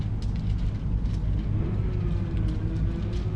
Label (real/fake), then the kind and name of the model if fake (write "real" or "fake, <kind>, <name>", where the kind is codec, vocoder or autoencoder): real